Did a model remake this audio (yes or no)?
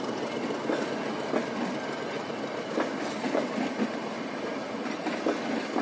no